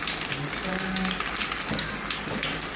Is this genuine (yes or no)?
yes